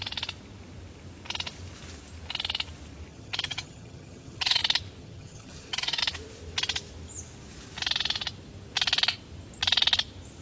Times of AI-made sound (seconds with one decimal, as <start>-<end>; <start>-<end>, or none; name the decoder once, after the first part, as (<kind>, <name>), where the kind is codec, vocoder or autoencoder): 3.1-4.6 (vocoder, HiFi-GAN); 5.0-6.0